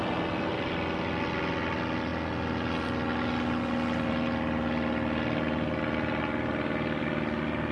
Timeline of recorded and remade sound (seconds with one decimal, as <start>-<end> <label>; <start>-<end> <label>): 0.0-7.7 recorded